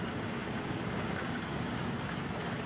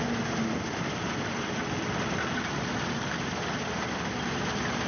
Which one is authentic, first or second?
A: second